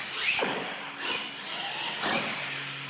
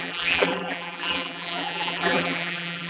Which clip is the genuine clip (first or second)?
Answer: first